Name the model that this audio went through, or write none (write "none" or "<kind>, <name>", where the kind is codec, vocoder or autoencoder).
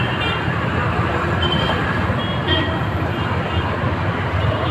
none